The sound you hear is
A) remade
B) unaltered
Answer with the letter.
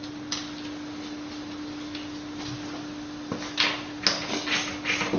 B